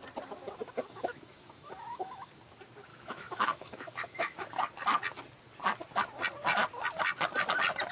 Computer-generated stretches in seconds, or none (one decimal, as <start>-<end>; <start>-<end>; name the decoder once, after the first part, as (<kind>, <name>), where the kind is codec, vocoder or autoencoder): 0.8-2.3 (autoencoder, DAC-VAE); 2.9-4.6